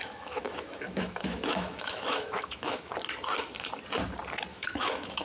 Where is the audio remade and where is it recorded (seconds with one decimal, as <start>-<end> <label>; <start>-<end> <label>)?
0.0-2.9 remade; 2.9-4.5 recorded; 4.5-5.2 remade